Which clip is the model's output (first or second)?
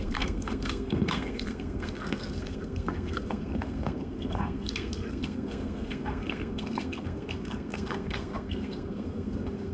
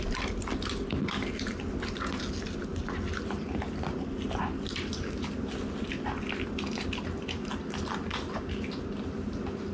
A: first